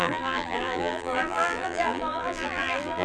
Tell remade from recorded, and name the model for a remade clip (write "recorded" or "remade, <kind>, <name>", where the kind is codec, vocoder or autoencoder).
remade, vocoder, BigVGAN v2